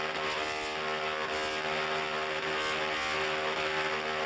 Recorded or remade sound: recorded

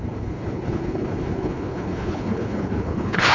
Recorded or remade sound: remade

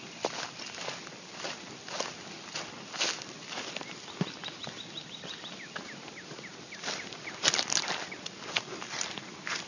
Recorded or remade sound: recorded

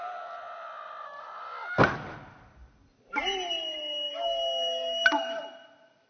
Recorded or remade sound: recorded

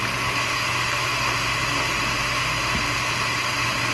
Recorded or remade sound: recorded